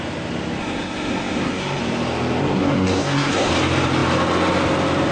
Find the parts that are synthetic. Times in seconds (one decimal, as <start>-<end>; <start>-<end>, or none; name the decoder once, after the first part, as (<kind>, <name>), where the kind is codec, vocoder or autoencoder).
0.6-1.8 (codec, SNAC); 2.4-3.5